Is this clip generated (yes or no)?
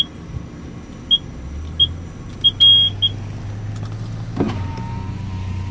no